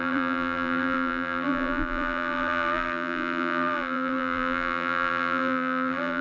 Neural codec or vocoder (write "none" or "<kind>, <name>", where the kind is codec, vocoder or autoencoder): vocoder, BigVGAN v2